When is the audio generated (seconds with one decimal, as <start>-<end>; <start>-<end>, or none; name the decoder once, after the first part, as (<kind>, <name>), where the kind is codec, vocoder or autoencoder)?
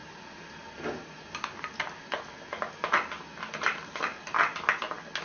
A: none